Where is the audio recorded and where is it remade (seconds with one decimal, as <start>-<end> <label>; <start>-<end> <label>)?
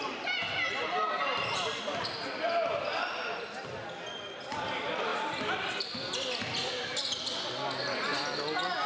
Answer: 0.0-8.9 recorded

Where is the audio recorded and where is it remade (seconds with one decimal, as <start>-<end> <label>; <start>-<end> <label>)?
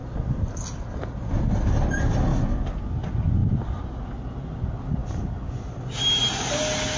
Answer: 0.0-1.2 remade; 1.2-3.4 recorded; 3.4-4.0 remade; 4.0-7.0 recorded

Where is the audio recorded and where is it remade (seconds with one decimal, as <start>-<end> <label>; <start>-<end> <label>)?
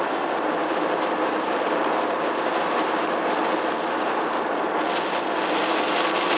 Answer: 0.0-0.6 recorded; 0.6-3.1 remade; 3.1-6.4 recorded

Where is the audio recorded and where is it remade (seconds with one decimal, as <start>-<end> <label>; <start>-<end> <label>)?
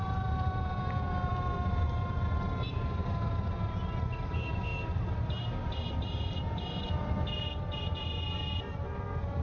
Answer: 0.0-9.4 remade